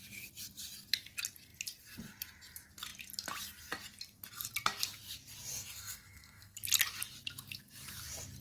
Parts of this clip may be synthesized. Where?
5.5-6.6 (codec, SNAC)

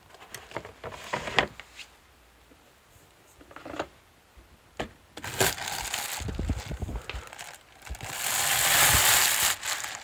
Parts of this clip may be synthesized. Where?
8.5-9.2 (vocoder, BigVGAN v2)

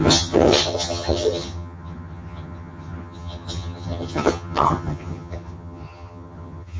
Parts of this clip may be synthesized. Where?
0.0-6.8 (vocoder, HiFi-GAN)

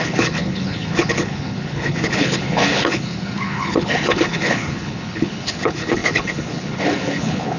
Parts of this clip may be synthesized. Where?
0.0-7.6 (codec, HILCodec)